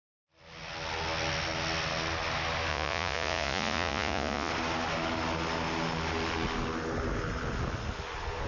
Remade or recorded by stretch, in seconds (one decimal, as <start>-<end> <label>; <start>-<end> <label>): 0.0-2.7 recorded; 2.7-4.5 remade; 4.5-8.5 recorded